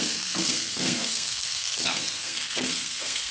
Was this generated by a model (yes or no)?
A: yes